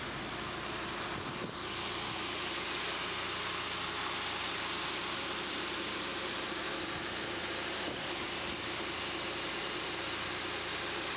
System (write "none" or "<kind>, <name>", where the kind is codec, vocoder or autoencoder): none